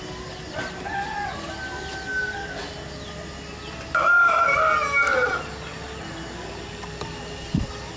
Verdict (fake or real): real